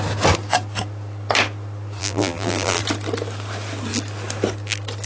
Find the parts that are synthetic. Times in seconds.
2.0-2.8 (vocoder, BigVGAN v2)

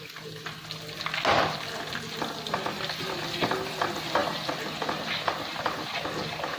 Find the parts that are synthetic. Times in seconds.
none